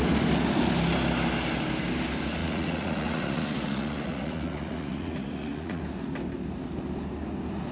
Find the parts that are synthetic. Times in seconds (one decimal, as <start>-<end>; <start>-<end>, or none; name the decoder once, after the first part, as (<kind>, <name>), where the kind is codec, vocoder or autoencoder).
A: 2.4-5.8 (vocoder, Vocos)